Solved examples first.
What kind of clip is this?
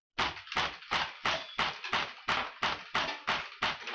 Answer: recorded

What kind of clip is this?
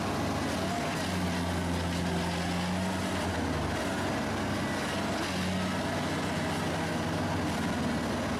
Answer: recorded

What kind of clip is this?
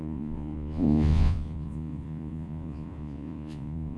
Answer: remade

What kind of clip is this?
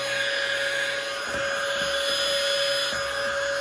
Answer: recorded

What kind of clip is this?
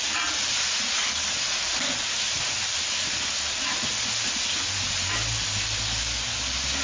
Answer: recorded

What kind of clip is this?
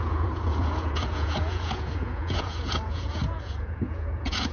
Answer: remade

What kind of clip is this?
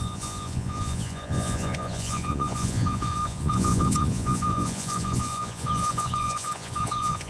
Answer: remade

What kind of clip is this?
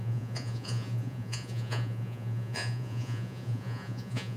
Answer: remade